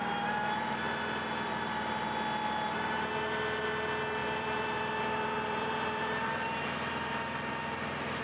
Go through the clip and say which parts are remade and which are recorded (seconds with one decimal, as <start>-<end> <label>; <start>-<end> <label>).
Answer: 0.0-4.2 recorded; 4.2-6.7 remade; 6.7-8.2 recorded